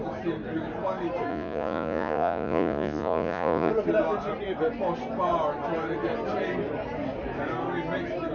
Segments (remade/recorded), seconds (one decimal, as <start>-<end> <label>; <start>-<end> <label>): 0.0-1.3 recorded; 1.3-3.7 remade; 3.7-8.3 recorded